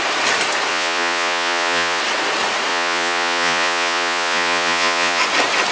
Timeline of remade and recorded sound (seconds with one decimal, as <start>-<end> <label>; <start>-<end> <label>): 0.0-0.7 recorded; 0.7-2.0 remade; 2.0-2.7 recorded; 2.7-5.2 remade; 5.2-5.7 recorded